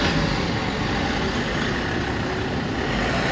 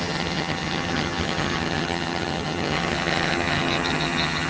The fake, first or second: second